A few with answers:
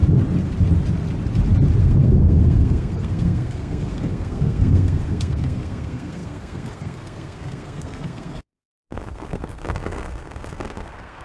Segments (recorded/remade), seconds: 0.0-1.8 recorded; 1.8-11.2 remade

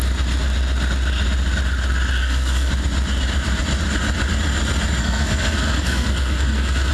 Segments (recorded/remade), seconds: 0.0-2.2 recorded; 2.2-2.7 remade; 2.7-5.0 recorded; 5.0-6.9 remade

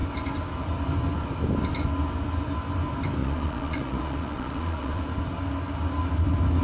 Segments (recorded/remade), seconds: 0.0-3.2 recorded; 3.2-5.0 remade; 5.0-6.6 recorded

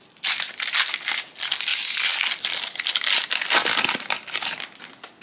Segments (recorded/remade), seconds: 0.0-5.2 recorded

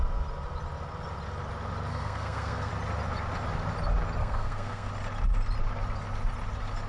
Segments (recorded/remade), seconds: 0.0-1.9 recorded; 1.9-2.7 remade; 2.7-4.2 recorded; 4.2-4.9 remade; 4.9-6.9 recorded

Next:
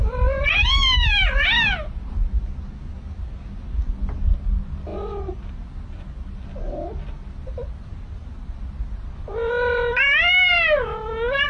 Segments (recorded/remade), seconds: 0.0-4.9 recorded; 4.9-5.5 remade; 5.5-11.5 recorded